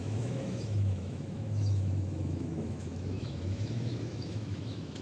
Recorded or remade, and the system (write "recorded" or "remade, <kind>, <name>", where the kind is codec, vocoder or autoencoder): remade, autoencoder, DAC-VAE